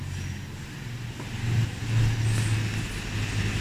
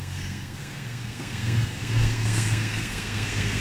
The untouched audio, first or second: first